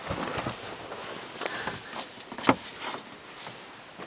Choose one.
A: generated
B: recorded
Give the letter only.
B